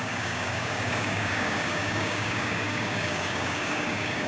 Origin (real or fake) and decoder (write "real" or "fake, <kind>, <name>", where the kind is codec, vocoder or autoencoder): fake, codec, DAC